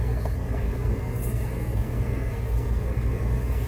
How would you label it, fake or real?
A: fake